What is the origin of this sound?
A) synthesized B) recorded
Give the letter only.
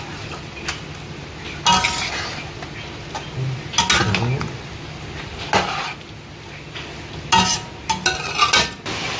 B